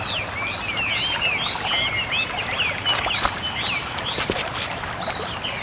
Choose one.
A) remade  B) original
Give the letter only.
B